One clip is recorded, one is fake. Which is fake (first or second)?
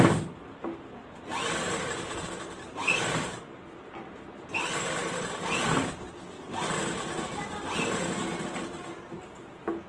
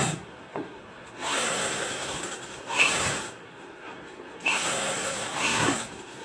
second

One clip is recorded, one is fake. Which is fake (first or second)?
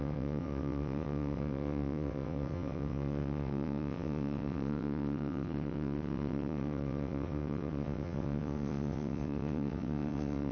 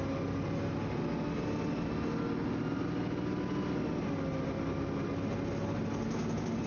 first